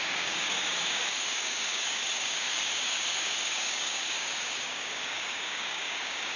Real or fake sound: fake